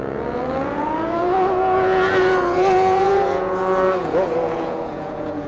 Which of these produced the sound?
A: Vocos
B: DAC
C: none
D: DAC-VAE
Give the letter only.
A